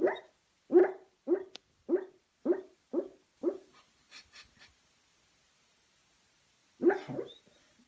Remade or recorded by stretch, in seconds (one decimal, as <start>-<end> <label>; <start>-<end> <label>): 0.0-7.9 recorded